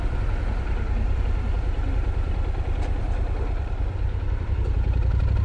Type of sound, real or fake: fake